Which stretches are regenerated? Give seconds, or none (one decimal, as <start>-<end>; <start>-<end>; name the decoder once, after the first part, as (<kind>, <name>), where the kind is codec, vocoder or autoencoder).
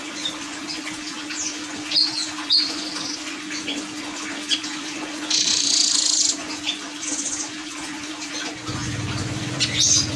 0.0-10.2 (vocoder, Vocos)